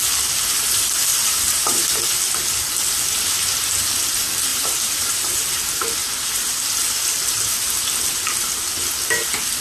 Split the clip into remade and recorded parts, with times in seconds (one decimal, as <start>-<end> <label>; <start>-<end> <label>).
0.0-1.1 recorded; 1.1-2.0 remade; 2.0-4.5 recorded; 4.5-5.4 remade; 5.4-6.0 recorded; 6.0-6.6 remade; 6.6-9.6 recorded